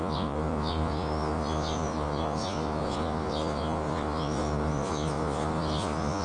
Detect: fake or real fake